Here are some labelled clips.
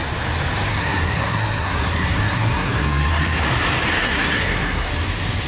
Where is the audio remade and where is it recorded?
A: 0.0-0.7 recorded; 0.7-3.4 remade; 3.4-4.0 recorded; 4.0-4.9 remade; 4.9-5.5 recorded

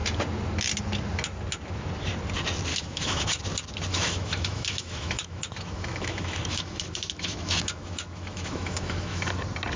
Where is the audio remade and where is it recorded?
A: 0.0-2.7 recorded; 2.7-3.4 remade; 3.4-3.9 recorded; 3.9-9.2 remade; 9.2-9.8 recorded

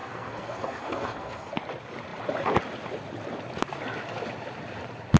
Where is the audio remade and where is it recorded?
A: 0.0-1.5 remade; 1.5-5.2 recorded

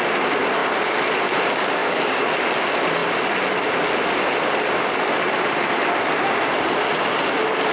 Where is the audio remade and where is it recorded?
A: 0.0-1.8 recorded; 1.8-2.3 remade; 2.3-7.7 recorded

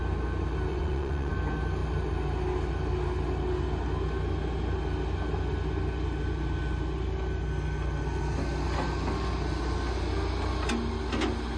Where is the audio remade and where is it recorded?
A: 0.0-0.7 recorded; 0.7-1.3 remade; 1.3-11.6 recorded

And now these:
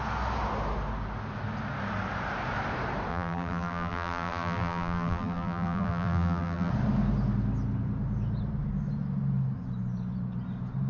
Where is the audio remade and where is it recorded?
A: 0.0-3.1 recorded; 3.1-6.7 remade; 6.7-10.9 recorded

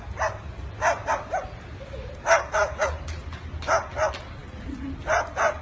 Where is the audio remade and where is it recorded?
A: 0.0-5.6 recorded